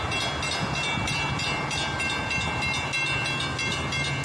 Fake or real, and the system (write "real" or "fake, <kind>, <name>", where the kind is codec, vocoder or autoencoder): real